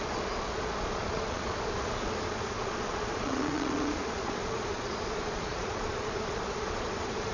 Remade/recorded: remade